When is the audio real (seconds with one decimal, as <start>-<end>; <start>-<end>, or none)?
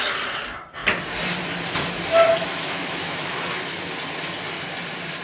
0.0-2.5; 3.9-5.2